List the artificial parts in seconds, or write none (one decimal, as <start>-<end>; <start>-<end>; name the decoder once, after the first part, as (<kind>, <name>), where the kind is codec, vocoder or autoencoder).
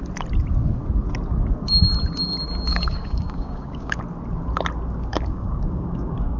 2.7-4.0 (codec, DAC); 5.1-6.4